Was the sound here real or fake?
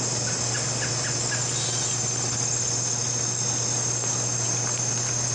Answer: real